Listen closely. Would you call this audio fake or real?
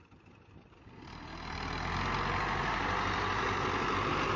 real